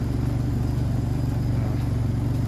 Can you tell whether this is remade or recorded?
recorded